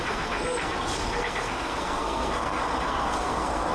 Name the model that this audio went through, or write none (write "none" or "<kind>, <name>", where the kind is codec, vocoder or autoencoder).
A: codec, SNAC